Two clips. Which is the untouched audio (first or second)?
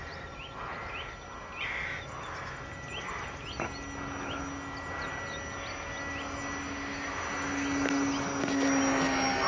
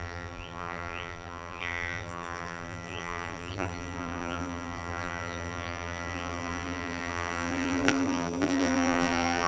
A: first